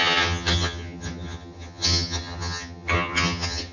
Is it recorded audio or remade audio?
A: remade